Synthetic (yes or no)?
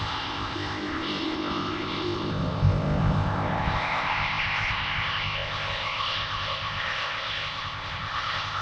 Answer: yes